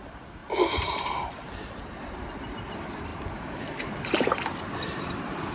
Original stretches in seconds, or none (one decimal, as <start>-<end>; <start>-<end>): 0.0-5.5